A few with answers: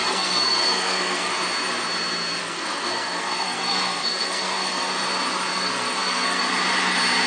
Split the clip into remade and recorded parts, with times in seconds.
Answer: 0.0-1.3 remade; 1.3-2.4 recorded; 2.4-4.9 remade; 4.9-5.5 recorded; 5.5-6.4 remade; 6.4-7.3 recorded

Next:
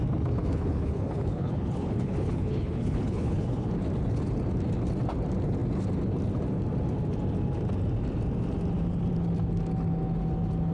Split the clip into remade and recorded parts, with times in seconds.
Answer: 0.0-0.4 recorded; 0.4-3.7 remade; 3.7-10.7 recorded

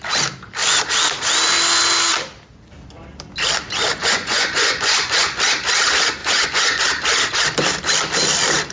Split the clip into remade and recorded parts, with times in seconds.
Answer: 0.0-4.0 recorded; 4.0-5.4 remade; 5.4-6.2 recorded; 6.2-6.8 remade; 6.8-8.7 recorded

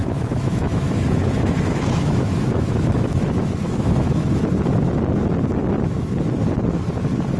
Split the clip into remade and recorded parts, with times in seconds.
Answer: 0.0-4.4 remade; 4.4-7.4 recorded

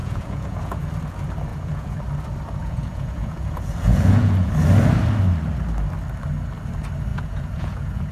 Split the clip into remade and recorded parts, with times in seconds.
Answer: 0.0-0.9 remade; 0.9-1.5 recorded; 1.5-2.0 remade; 2.0-2.6 recorded; 2.6-4.5 remade; 4.5-7.1 recorded; 7.1-8.1 remade